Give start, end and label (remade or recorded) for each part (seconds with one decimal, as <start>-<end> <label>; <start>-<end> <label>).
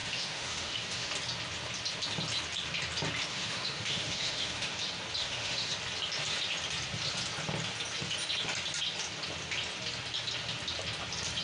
0.0-1.1 remade; 1.1-3.3 recorded; 3.3-4.8 remade; 4.8-5.2 recorded; 5.2-5.7 remade; 5.7-11.4 recorded